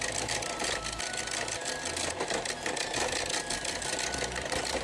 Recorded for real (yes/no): yes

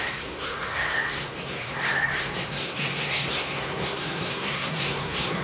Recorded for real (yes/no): no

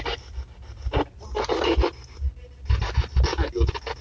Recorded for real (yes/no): yes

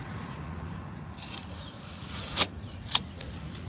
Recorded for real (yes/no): no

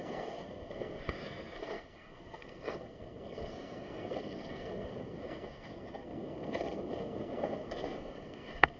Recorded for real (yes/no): no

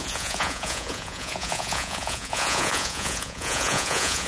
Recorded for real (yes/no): no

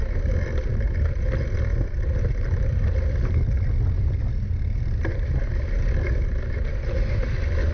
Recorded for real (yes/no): yes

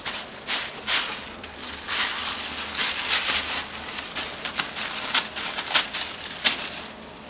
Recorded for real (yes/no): yes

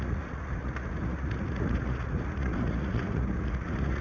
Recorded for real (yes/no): no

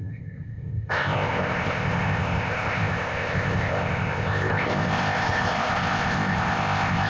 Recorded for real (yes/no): no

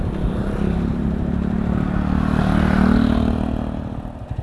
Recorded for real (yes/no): yes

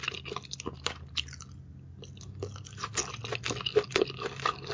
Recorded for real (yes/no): yes